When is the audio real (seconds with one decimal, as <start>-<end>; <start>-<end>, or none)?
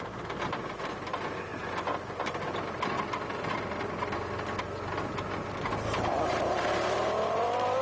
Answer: 0.0-5.7